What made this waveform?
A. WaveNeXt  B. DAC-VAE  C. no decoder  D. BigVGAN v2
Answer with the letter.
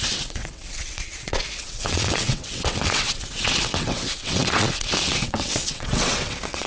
A